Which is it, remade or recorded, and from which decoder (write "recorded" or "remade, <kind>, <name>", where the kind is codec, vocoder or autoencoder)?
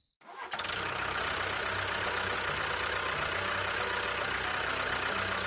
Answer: recorded